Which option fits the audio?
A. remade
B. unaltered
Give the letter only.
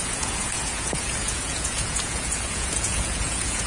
A